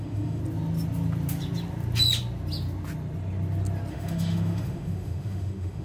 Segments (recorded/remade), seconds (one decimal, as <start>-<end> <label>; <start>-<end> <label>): 0.0-0.4 remade; 0.4-3.9 recorded; 3.9-5.8 remade